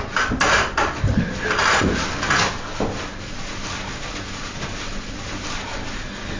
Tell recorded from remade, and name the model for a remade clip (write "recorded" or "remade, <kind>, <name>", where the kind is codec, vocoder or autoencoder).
recorded